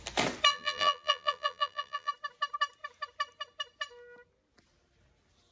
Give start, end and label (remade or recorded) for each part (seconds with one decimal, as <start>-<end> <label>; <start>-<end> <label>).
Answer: 0.0-0.5 recorded; 0.5-2.1 remade; 2.1-5.5 recorded